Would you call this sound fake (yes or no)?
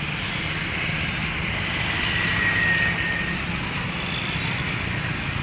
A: no